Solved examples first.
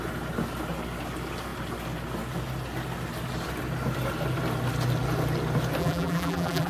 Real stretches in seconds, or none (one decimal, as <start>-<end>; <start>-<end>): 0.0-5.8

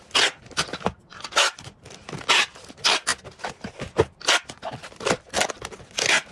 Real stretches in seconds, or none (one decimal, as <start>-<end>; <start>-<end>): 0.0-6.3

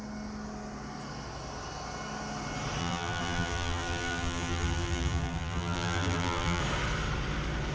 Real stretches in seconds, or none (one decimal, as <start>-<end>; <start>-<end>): 0.0-2.8; 6.6-7.7